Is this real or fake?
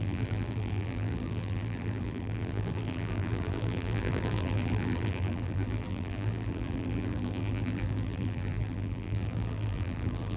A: fake